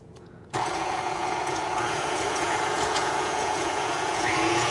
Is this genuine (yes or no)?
no